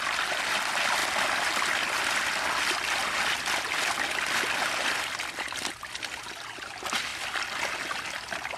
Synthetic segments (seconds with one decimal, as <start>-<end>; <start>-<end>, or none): none